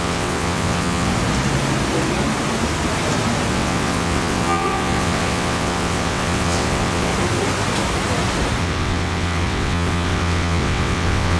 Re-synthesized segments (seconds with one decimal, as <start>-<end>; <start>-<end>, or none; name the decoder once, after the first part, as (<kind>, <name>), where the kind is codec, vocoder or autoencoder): 0.0-1.1 (vocoder, WaveNeXt); 3.5-7.1; 8.6-11.4